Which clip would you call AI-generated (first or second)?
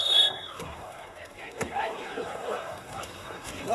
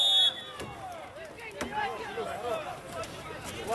first